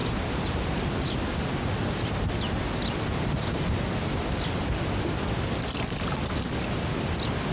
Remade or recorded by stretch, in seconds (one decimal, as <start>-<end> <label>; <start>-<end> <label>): 0.0-7.5 recorded